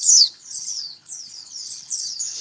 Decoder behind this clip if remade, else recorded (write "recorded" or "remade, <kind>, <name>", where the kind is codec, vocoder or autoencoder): remade, codec, HILCodec